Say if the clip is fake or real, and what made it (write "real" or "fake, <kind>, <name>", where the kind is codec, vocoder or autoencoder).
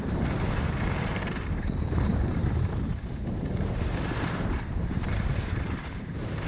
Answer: fake, vocoder, BigVGAN v2